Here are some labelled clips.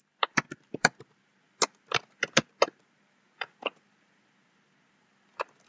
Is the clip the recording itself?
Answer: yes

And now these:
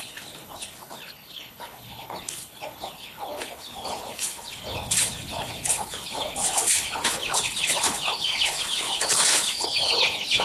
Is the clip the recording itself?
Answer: no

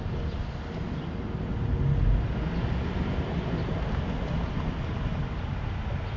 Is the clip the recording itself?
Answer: yes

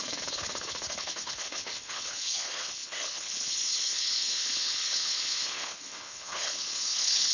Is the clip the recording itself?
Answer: no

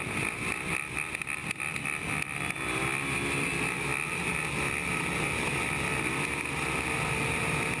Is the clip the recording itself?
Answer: yes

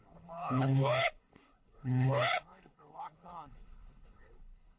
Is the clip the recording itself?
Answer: no